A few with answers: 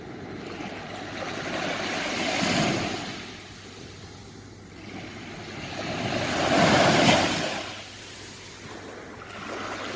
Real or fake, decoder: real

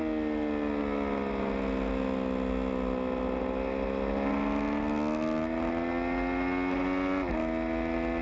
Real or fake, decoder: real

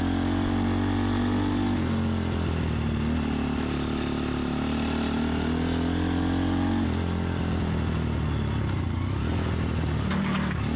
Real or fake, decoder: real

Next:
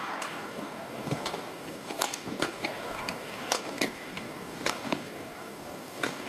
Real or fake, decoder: fake, codec, DAC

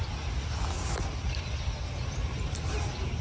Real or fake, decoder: real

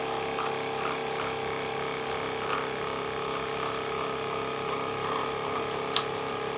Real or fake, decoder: real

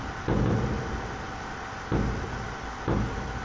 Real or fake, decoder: real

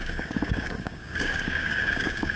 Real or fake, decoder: fake, codec, DAC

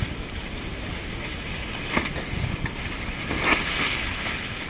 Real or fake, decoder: real